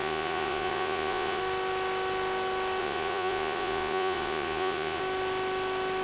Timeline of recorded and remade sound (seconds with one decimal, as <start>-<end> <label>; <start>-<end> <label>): 0.0-1.4 remade; 1.4-2.8 recorded; 2.8-5.0 remade; 5.0-6.0 recorded